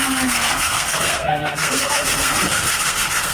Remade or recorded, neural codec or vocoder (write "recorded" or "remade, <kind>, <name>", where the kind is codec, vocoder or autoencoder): remade, codec, SNAC